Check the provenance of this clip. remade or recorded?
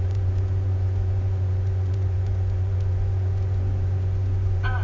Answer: remade